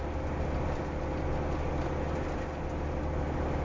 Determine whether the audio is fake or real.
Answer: real